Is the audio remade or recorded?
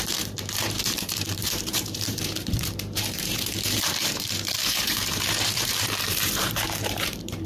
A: remade